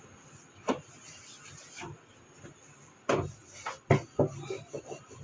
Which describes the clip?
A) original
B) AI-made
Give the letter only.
A